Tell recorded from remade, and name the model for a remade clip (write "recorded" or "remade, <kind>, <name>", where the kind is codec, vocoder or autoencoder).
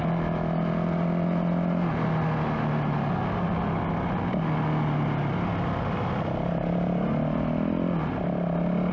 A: recorded